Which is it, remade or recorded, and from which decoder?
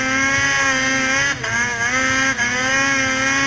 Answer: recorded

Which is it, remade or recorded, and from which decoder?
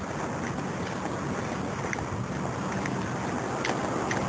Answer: recorded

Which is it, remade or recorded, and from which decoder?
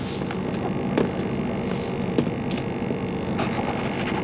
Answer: recorded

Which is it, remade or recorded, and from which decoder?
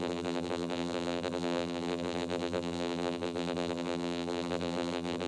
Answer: remade, vocoder, BigVGAN v2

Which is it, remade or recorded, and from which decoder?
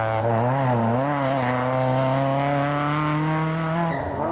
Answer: recorded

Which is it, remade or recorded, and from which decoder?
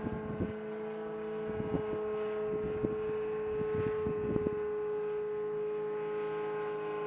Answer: recorded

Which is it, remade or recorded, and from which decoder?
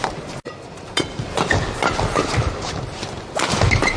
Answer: recorded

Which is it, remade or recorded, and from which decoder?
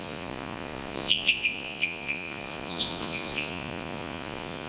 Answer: remade, vocoder, Vocos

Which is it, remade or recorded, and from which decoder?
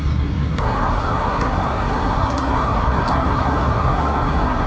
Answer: remade, codec, SNAC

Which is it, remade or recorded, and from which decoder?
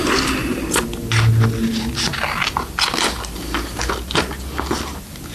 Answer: recorded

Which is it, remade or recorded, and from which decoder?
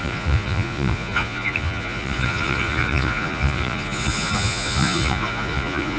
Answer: remade, vocoder, Vocos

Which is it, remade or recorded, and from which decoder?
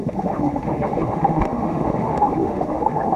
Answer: remade, autoencoder, DAC-VAE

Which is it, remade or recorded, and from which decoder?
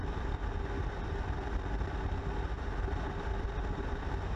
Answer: recorded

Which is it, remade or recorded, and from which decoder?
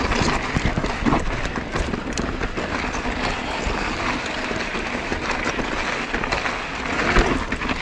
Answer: recorded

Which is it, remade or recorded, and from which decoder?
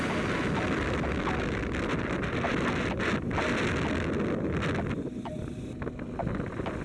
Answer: recorded